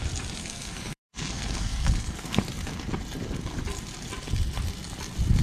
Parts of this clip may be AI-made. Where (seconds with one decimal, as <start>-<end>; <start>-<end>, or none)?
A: 0.4-2.4